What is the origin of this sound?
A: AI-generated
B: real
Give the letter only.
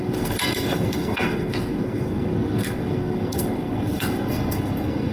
A